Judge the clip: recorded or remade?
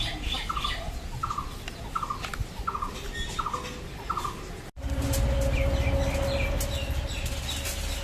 recorded